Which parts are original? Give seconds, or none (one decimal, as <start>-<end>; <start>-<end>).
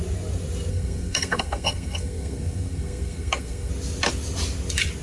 0.0-0.7; 3.7-5.0